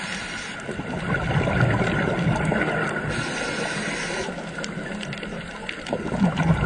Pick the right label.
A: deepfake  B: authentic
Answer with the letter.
B